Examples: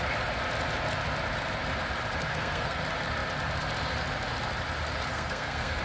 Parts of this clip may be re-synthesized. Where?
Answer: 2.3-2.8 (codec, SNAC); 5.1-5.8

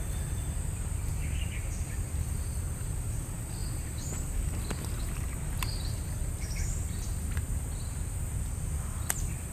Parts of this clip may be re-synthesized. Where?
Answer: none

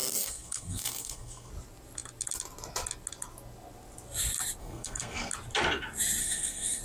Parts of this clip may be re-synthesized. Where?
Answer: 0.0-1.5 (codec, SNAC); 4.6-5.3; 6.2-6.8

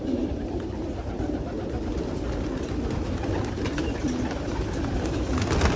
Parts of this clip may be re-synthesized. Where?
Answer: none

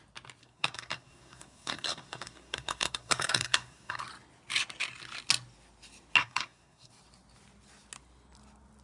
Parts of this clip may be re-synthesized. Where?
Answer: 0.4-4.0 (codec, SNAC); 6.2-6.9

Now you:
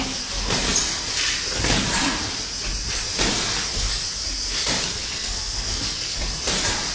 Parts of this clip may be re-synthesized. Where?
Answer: 4.9-6.2 (codec, SNAC)